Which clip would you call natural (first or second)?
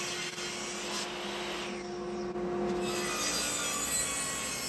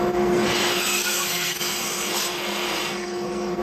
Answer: first